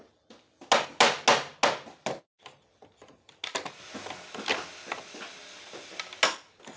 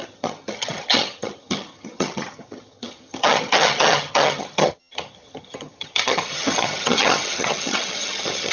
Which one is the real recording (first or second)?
first